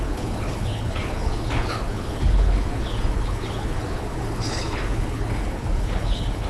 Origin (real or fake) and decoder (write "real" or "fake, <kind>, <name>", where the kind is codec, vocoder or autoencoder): fake, codec, HILCodec